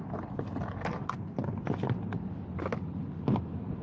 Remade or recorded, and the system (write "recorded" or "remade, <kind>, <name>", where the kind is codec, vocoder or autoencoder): recorded